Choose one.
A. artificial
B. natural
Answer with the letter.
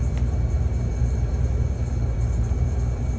A